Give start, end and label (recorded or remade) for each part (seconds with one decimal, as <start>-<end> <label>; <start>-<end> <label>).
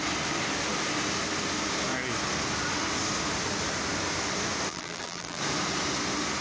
0.0-4.7 recorded; 4.7-5.4 remade; 5.4-6.4 recorded